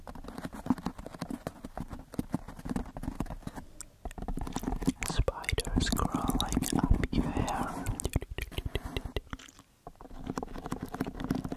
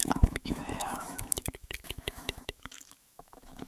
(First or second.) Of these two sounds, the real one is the first